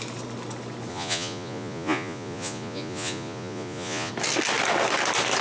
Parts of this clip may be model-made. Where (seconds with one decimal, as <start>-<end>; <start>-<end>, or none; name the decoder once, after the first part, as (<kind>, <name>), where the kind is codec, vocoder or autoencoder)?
0.9-4.1 (vocoder, Vocos)